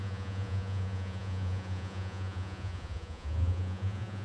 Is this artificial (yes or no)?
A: yes